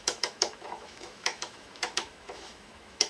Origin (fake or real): fake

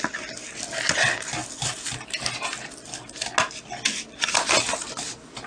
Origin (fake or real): real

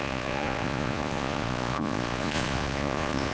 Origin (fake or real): fake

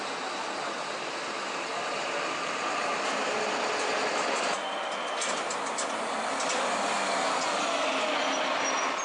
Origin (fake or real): real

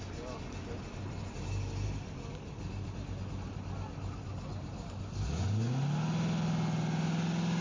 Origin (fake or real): real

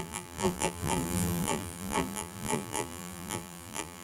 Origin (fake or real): fake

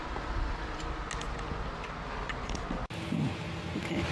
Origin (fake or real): real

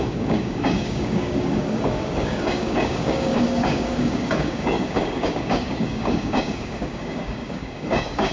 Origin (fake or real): fake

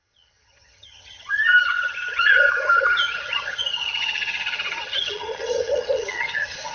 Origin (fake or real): fake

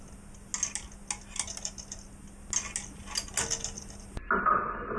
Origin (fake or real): real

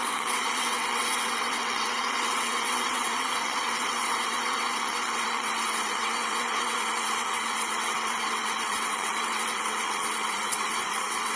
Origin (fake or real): fake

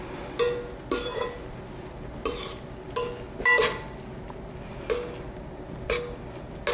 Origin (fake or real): real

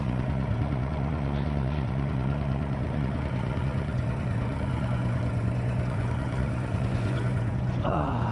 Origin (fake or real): fake